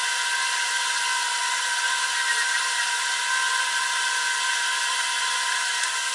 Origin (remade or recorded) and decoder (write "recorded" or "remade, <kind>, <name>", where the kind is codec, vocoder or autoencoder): recorded